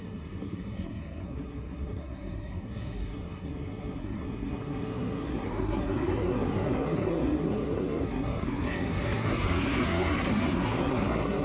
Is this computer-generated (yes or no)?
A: yes